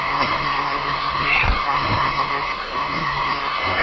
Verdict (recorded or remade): remade